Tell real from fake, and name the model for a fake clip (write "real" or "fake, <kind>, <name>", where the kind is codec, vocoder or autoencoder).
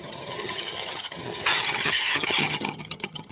fake, vocoder, HiFi-GAN